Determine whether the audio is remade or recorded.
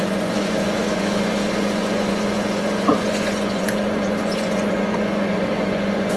remade